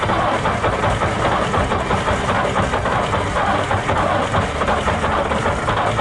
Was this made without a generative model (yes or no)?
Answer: no